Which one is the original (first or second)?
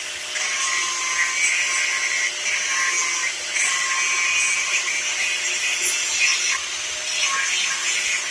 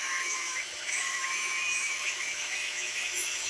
first